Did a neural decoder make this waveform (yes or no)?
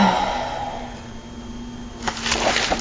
no